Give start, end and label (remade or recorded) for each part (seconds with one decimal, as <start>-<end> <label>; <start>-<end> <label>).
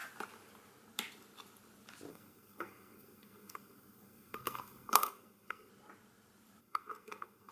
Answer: 0.0-2.1 recorded; 2.1-5.7 remade; 5.7-6.6 recorded; 6.6-7.5 remade